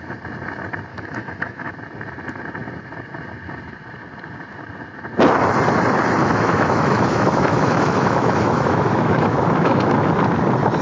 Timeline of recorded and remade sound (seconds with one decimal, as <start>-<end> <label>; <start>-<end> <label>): 0.0-0.9 recorded; 0.9-1.7 remade; 1.7-6.2 recorded; 6.2-10.1 remade; 10.1-10.8 recorded